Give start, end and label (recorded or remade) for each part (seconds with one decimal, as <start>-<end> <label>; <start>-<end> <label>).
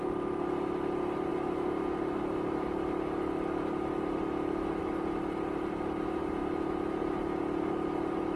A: 0.0-8.4 recorded